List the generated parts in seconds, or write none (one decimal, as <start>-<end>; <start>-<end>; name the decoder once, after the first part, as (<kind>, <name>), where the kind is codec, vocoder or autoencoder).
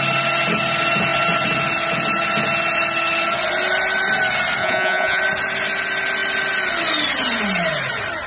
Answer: 4.6-5.2 (vocoder, Vocos)